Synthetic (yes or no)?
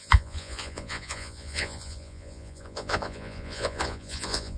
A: yes